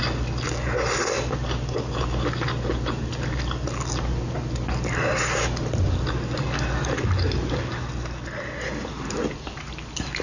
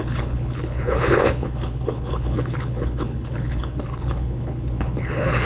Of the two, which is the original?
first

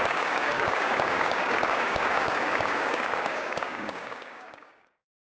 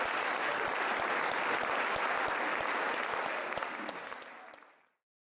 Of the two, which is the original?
second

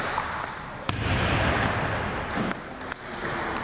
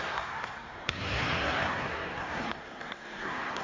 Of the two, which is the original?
first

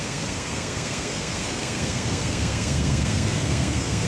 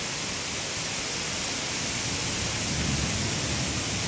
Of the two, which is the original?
second